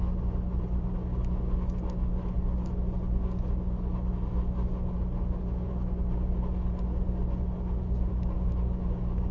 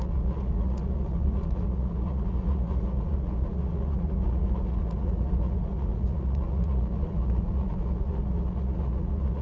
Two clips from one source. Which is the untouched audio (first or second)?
first